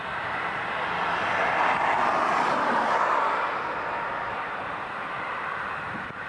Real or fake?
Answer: real